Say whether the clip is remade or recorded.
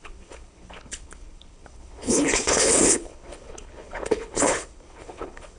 remade